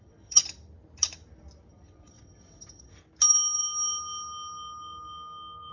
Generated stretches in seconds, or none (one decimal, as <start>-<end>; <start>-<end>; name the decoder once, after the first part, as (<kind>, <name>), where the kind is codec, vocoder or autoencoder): 0.0-0.4 (vocoder, WaveNeXt); 1.7-3.0